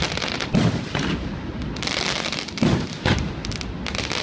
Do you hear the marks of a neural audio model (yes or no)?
no